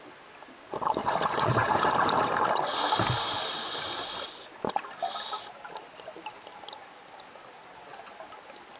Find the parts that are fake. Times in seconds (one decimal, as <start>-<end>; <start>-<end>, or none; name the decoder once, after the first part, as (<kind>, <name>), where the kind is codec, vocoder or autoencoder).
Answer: 1.0-1.8 (vocoder, Vocos)